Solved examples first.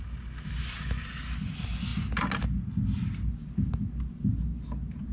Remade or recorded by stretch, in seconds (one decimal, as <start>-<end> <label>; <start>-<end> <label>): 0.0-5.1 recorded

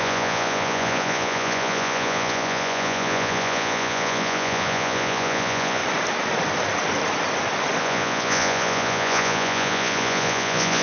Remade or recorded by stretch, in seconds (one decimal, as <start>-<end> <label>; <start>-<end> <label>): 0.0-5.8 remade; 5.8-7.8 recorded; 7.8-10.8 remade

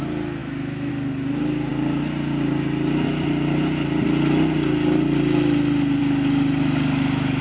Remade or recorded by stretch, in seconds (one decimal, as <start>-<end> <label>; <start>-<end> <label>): 0.0-0.4 recorded; 0.4-0.9 remade; 0.9-7.4 recorded

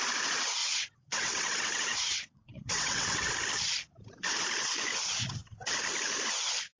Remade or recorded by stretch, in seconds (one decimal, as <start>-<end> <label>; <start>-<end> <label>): 0.0-0.6 recorded; 0.6-3.3 remade; 3.3-6.8 recorded